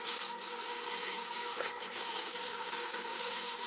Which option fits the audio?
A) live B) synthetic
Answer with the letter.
B